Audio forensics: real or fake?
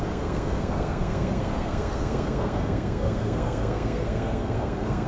fake